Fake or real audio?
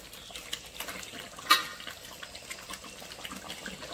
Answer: real